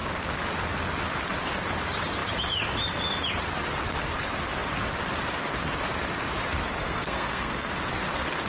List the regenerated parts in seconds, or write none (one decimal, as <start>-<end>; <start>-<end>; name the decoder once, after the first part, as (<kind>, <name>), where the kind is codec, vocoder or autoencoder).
6.8-7.7 (codec, SNAC)